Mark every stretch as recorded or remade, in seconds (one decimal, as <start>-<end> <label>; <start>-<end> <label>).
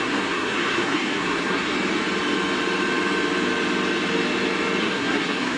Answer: 0.0-1.7 remade; 1.7-4.8 recorded; 4.8-5.6 remade